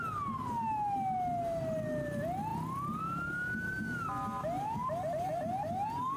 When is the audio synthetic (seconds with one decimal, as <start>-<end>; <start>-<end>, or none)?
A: none